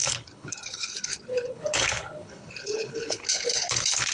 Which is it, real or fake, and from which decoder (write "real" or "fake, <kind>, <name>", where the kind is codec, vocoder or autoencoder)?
fake, codec, HILCodec